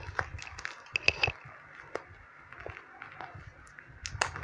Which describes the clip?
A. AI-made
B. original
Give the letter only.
B